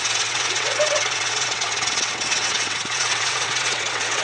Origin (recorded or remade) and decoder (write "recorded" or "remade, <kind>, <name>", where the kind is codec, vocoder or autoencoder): remade, vocoder, WaveNeXt